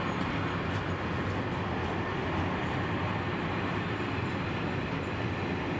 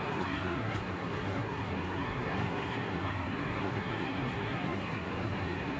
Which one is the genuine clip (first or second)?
first